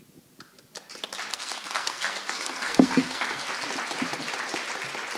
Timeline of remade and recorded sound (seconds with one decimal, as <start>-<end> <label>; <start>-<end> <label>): 0.0-1.3 recorded; 1.3-3.5 remade; 3.5-5.2 recorded

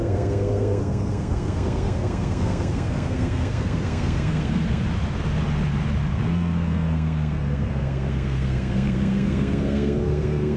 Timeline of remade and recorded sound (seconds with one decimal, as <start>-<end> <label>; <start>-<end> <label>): 0.0-4.8 remade; 4.8-6.1 recorded; 6.1-10.6 remade

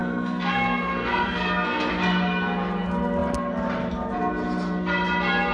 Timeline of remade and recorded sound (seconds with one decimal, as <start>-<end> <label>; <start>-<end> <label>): 0.0-1.9 remade; 1.9-5.5 recorded

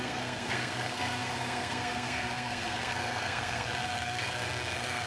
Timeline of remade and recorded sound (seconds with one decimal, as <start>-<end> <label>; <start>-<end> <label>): 0.0-5.1 remade

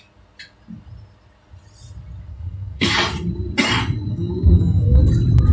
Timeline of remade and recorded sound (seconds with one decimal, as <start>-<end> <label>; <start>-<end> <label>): 0.0-2.3 recorded; 2.3-2.9 remade; 2.9-4.1 recorded; 4.1-5.0 remade; 5.0-5.5 recorded

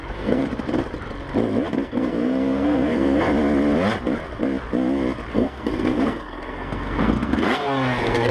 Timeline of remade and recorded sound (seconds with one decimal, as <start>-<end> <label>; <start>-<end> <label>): 0.0-0.4 remade; 0.4-1.7 recorded; 1.7-3.3 remade; 3.3-5.3 recorded; 5.3-8.3 remade